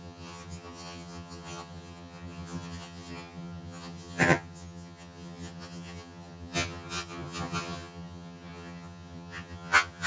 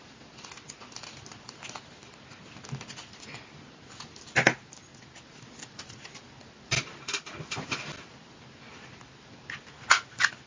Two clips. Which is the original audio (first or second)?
second